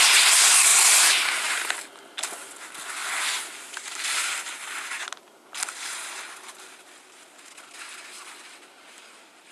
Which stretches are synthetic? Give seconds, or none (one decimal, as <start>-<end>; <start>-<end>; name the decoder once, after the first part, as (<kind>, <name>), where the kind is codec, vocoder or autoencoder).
none